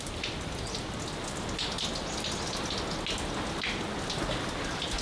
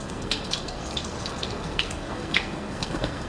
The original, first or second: first